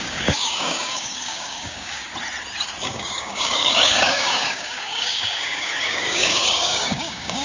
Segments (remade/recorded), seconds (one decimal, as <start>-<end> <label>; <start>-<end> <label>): 0.0-2.0 remade; 2.0-2.8 recorded; 2.8-7.4 remade